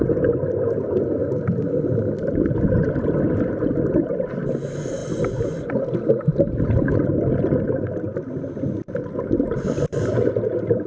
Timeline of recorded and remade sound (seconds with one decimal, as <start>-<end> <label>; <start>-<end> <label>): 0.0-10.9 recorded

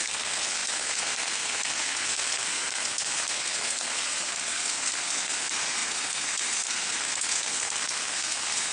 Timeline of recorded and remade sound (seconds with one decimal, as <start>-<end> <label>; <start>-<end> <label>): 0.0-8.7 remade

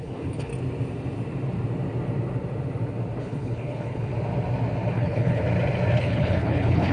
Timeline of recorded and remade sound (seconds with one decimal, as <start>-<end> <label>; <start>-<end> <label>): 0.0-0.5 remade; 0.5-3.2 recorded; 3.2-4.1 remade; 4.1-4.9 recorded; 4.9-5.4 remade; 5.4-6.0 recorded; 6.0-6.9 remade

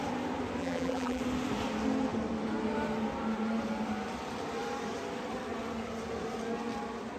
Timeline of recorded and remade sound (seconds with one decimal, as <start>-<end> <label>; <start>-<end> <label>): 0.0-0.6 recorded; 0.6-1.2 remade; 1.2-7.2 recorded